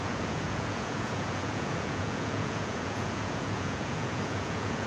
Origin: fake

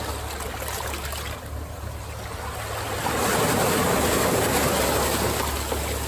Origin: real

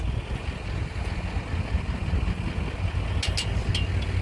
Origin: real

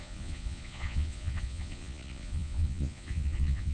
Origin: fake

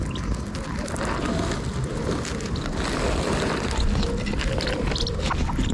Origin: real